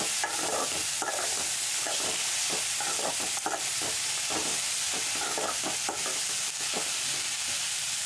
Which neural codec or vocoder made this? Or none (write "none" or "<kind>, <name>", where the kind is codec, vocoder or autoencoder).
none